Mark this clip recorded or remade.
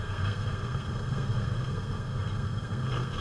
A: remade